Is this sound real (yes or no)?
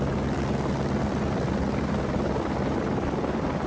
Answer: yes